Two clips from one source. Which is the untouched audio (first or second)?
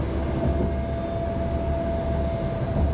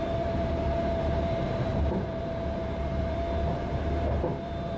first